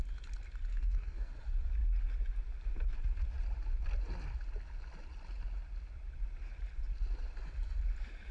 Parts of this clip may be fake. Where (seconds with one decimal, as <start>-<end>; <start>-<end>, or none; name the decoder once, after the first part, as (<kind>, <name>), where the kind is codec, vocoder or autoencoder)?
0.7-1.3 (codec, SNAC)